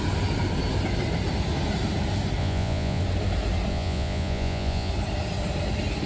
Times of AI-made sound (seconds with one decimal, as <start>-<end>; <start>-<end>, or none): 2.4-3.0; 3.7-4.9